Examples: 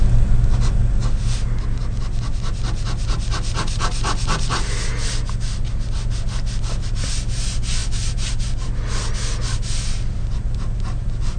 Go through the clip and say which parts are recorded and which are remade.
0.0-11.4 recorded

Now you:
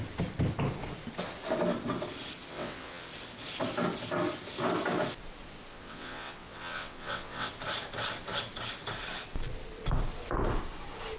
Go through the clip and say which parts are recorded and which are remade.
0.0-2.5 recorded; 2.5-3.1 remade; 3.1-5.7 recorded; 5.7-7.5 remade; 7.5-11.2 recorded

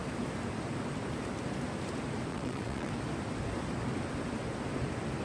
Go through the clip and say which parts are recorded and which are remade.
0.0-2.3 recorded; 2.3-2.9 remade; 2.9-5.2 recorded

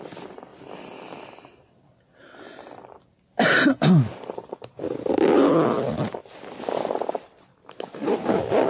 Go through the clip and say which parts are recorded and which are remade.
0.0-8.7 recorded

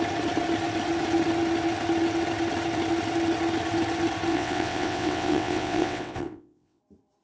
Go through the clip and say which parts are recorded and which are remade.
0.0-4.3 recorded; 4.3-6.8 remade; 6.8-7.2 recorded

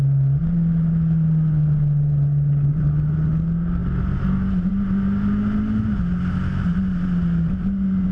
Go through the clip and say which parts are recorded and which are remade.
0.0-8.1 recorded